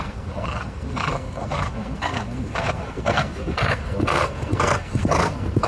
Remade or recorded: remade